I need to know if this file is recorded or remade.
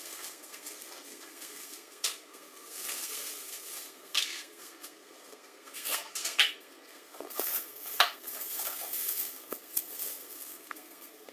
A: remade